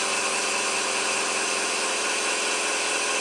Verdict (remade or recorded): recorded